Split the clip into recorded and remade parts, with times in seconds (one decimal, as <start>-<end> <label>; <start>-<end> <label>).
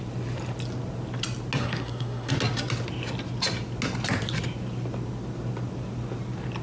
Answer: 0.0-1.6 recorded; 1.6-2.3 remade; 2.3-6.6 recorded